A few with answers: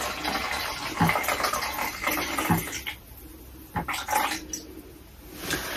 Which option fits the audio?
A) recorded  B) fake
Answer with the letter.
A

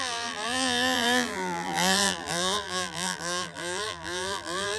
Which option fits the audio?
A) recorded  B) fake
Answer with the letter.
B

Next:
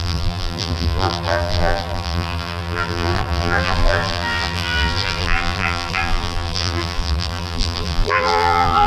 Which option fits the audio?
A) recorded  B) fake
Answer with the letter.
B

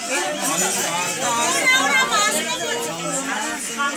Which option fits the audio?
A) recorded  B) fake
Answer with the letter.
A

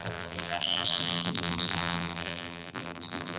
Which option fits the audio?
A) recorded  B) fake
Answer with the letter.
B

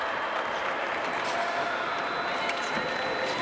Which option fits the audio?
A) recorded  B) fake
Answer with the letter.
A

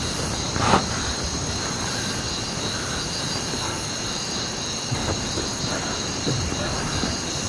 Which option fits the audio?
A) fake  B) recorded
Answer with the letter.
B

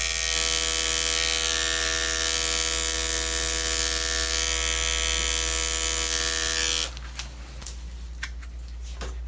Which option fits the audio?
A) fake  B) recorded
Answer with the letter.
B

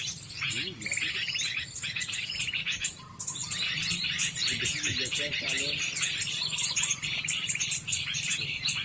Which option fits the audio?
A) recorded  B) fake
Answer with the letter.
B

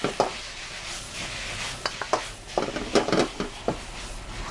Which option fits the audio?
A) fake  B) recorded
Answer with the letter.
B